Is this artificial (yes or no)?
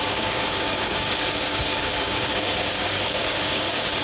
yes